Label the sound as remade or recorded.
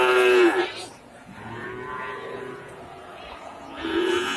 remade